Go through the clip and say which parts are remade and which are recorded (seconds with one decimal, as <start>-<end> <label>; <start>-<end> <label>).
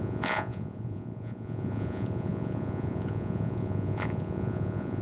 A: 0.0-5.0 remade